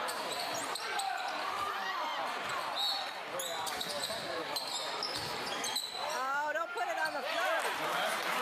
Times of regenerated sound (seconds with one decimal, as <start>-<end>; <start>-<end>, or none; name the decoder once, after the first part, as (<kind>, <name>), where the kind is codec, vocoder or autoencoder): 0.0-2.1 (vocoder, BigVGAN v2); 5.0-8.4